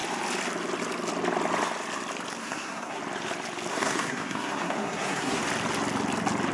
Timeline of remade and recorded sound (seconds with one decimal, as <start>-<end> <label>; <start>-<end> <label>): 0.0-2.4 recorded; 2.4-3.0 remade; 3.0-3.7 recorded; 3.7-5.4 remade; 5.4-6.5 recorded